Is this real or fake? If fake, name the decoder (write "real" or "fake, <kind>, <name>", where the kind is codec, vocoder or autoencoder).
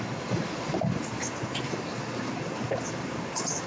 real